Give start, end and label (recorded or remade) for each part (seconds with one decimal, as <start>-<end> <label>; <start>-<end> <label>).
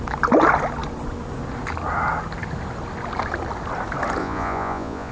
0.0-4.2 recorded; 4.2-5.1 remade